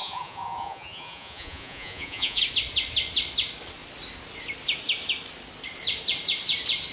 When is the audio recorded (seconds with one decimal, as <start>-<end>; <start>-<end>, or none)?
2.4-6.9